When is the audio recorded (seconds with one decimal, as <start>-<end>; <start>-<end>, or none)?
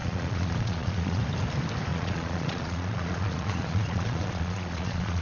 1.2-1.9